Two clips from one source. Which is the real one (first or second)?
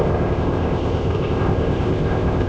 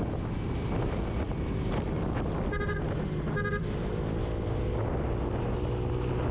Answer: second